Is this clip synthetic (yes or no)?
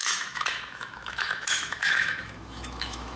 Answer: yes